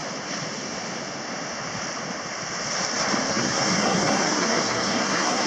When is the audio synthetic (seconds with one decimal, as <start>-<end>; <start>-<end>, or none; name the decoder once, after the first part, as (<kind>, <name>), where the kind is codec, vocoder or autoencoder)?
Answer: 3.3-5.5 (codec, SNAC)